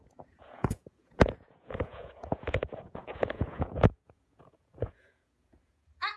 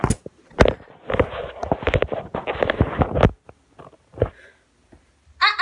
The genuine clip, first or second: second